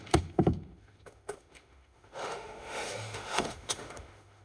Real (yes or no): no